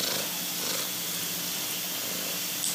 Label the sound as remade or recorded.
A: recorded